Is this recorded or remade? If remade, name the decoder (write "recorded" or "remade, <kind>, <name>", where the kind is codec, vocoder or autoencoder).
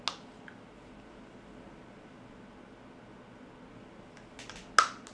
recorded